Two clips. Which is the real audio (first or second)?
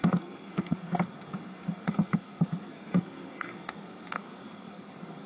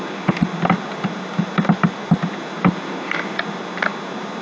second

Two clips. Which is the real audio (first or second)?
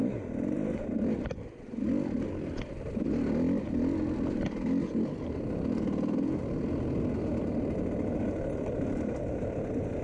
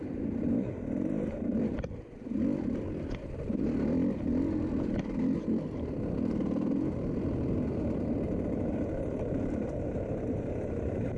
first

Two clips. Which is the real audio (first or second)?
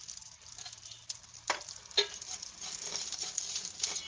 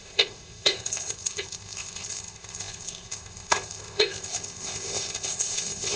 first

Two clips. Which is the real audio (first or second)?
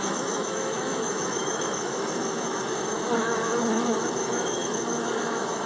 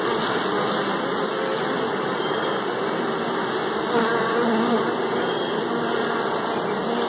second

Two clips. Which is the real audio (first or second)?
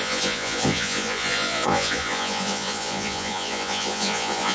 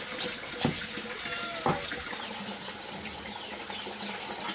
second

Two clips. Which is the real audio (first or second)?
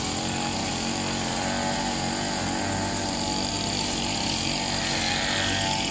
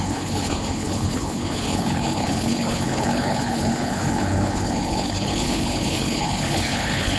first